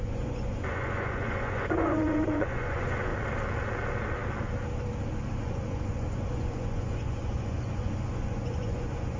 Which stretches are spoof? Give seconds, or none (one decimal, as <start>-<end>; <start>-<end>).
0.0-3.1; 5.4-9.2